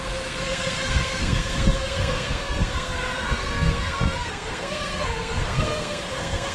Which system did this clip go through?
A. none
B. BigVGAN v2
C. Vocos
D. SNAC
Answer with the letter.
D